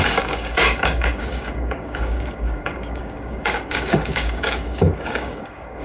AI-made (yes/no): yes